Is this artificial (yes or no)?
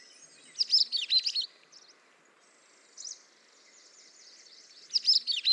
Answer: no